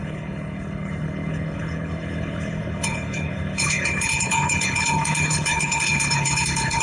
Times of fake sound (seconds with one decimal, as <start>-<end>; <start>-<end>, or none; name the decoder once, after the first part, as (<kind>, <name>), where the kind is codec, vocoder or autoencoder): 0.0-6.8 (codec, HILCodec)